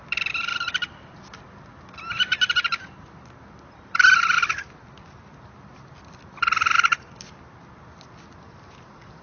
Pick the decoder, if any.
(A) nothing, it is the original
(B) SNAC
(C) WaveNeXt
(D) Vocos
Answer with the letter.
A